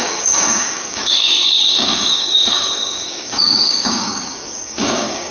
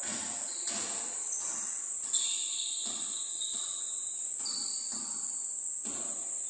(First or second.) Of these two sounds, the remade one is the first